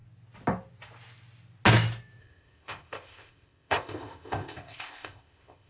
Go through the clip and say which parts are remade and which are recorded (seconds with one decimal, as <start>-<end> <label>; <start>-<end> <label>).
0.0-2.2 recorded; 2.2-5.7 remade